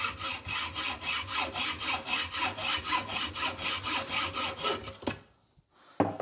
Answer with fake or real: real